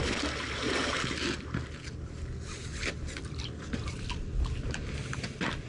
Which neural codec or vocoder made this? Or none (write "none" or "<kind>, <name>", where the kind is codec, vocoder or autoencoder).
none